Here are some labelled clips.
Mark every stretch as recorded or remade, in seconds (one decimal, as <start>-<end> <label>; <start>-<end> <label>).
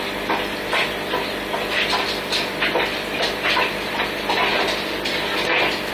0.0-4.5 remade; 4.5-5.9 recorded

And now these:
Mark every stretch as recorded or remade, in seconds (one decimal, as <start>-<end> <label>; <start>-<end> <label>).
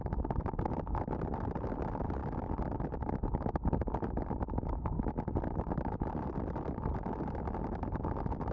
0.0-8.5 recorded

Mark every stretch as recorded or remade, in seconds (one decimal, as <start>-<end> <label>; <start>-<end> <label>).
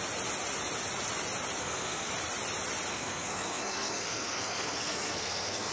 0.0-1.6 recorded; 1.6-2.1 remade; 2.1-2.9 recorded; 2.9-5.7 remade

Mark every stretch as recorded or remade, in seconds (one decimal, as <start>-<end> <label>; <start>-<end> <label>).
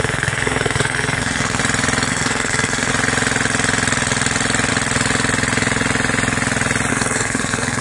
0.0-1.6 remade; 1.6-2.1 recorded; 2.1-2.9 remade; 2.9-6.9 recorded; 6.9-7.8 remade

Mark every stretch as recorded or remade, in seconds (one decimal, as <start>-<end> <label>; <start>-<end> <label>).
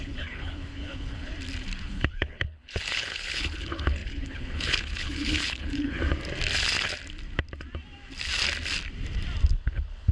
0.0-1.3 remade; 1.3-1.8 recorded; 1.8-6.0 remade; 6.0-9.5 recorded; 9.5-10.1 remade